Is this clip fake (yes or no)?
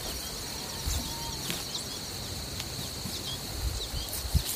no